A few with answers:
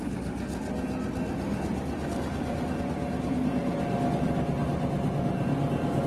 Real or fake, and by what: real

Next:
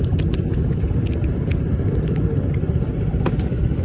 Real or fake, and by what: real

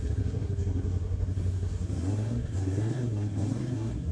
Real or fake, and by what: fake, codec, SNAC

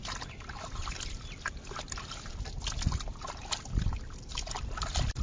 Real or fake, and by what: real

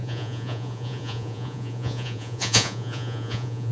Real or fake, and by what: fake, vocoder, Vocos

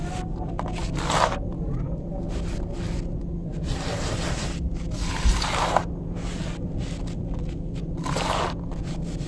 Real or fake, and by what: real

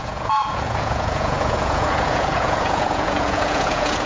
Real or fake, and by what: fake, vocoder, Vocos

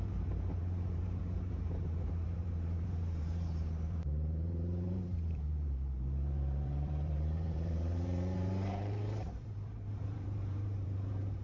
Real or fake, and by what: fake, vocoder, BigVGAN v2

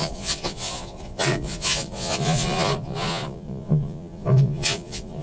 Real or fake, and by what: fake, vocoder, Vocos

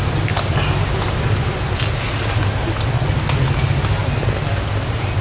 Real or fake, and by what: real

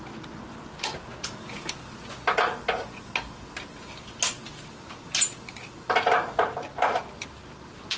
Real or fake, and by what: real